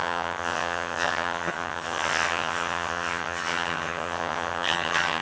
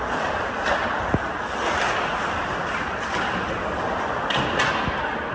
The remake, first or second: first